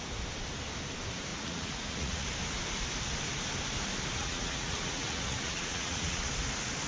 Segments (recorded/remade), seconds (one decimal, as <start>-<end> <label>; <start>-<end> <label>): 0.0-1.3 recorded; 1.3-2.3 remade; 2.3-4.2 recorded; 4.2-6.3 remade; 6.3-6.9 recorded